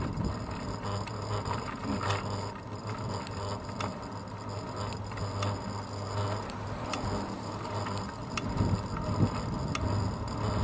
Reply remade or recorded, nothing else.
recorded